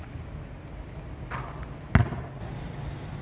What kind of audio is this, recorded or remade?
recorded